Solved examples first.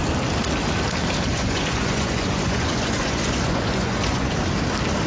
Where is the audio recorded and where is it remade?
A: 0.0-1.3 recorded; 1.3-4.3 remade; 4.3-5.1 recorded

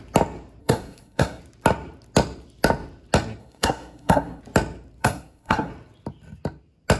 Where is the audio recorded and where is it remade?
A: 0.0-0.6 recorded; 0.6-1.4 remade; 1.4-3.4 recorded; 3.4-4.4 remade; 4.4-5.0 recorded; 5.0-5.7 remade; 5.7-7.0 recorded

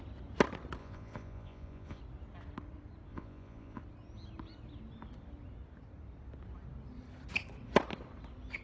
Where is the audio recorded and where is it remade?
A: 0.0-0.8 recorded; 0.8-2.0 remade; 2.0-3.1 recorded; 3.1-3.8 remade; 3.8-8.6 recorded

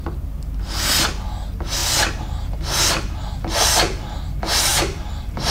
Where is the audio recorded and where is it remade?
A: 0.0-5.5 recorded

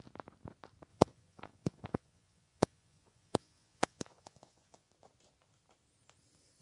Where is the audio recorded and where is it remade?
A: 0.0-0.9 recorded; 0.9-4.9 remade; 4.9-6.6 recorded